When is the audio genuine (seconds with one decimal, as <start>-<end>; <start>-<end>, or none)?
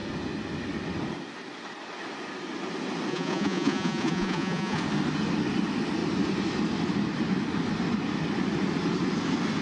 0.0-3.1; 4.8-9.6